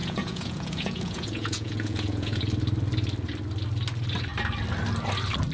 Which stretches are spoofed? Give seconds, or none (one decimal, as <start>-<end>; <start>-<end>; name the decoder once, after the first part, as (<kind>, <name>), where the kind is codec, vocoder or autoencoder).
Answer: 0.0-2.4 (vocoder, Vocos)